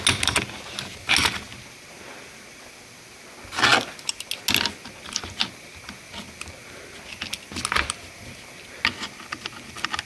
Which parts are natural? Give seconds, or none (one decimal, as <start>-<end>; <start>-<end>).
0.0-10.1